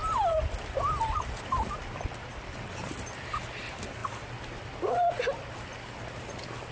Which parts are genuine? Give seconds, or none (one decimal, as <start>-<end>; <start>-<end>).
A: 0.0-6.7